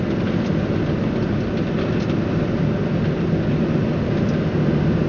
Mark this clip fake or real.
real